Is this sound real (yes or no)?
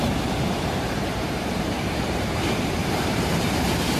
no